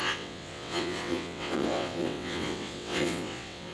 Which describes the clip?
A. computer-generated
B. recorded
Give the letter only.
A